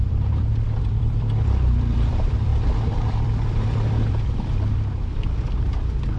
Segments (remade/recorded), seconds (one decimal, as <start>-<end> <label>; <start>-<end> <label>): 0.0-6.2 remade